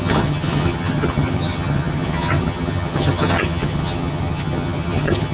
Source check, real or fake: fake